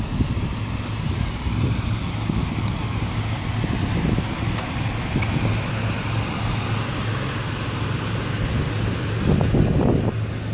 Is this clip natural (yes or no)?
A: yes